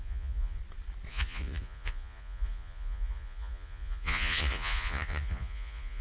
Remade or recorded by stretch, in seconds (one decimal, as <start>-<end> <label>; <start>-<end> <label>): 0.0-0.6 remade; 0.6-1.1 recorded; 1.1-6.0 remade